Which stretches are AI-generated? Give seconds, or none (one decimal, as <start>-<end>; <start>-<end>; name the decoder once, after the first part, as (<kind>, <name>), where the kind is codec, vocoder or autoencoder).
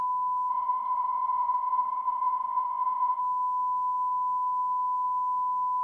0.5-3.2 (codec, HILCodec)